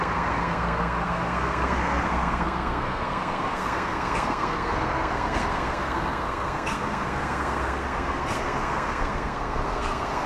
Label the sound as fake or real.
fake